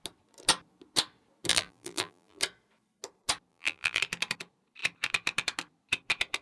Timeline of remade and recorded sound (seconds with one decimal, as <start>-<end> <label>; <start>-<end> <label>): 0.0-1.5 recorded; 1.5-2.4 remade; 2.4-3.5 recorded; 3.5-4.0 remade; 4.0-6.4 recorded